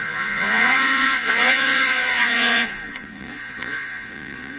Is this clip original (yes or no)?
no